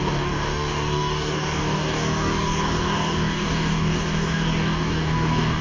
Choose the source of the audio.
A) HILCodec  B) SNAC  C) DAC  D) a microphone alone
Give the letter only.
C